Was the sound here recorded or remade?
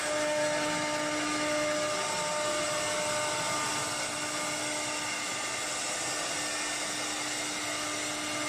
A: recorded